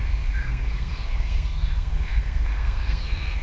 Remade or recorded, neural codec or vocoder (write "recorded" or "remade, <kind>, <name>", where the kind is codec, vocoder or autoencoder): remade, codec, SNAC